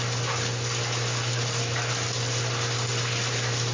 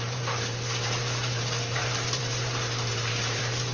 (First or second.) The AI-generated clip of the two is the second